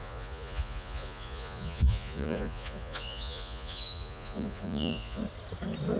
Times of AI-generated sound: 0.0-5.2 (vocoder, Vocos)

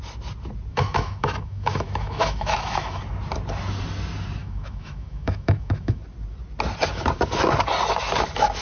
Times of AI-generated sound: 0.7-3.0 (autoencoder, DAC-VAE); 4.4-6.0

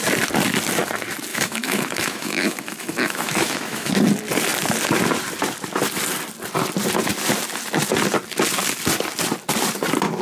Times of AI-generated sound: 1.3-3.9 (autoencoder, DAC-VAE)

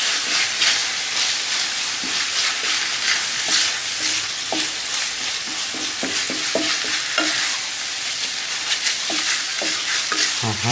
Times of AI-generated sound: 0.0-0.8 (vocoder, BigVGAN v2); 2.8-3.8; 7.9-9.5; 10.1-10.7

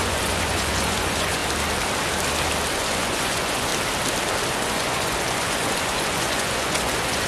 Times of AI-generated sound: 0.0-1.4 (vocoder, Vocos); 2.7-3.7; 4.5-7.3